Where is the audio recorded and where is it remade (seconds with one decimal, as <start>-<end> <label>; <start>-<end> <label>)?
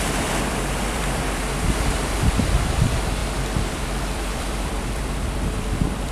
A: 0.0-3.2 remade; 3.2-3.7 recorded; 3.7-6.1 remade